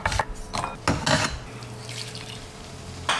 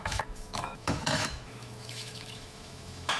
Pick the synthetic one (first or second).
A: second